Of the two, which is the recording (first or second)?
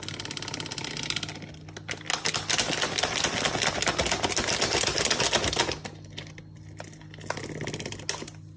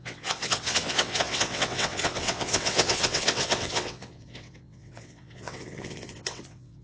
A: first